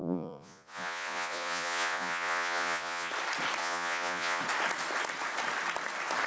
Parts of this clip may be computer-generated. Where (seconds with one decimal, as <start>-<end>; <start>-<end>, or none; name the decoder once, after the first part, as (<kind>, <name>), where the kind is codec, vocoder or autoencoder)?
0.0-3.1 (vocoder, Vocos); 3.6-4.4